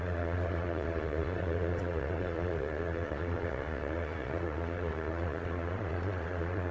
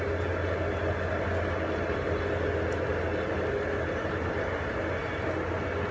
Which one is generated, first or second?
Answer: first